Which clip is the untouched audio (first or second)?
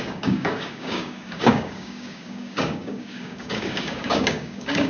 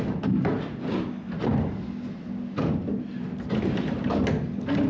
second